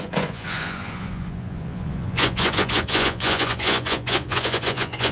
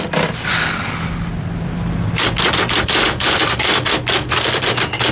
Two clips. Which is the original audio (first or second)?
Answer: second